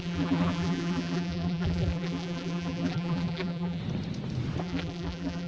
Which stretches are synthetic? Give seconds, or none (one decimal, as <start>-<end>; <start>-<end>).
0.0-3.8; 4.6-5.5